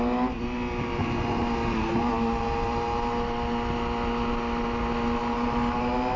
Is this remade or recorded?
recorded